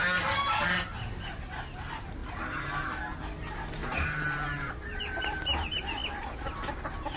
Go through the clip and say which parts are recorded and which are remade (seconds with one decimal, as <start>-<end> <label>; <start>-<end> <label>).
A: 0.0-2.2 recorded; 2.2-2.8 remade; 2.8-3.8 recorded; 3.8-5.0 remade; 5.0-7.2 recorded